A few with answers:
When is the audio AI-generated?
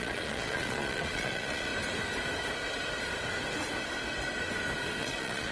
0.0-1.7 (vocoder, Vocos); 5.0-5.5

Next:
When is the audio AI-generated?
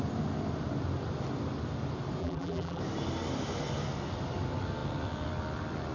2.2-2.8 (vocoder, BigVGAN v2)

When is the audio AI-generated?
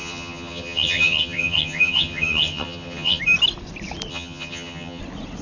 0.0-3.2 (vocoder, HiFi-GAN); 4.1-5.0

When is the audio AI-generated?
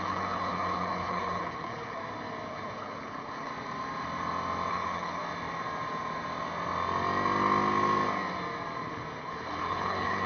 0.0-2.0 (codec, HILCodec); 2.5-3.5; 4.7-5.2; 9.2-10.3